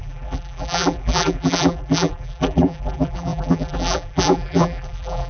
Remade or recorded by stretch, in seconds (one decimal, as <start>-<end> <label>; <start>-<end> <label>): 0.0-5.3 remade